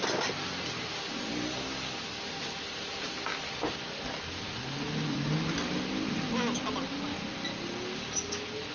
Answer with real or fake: real